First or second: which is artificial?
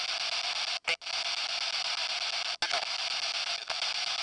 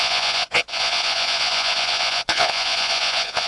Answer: second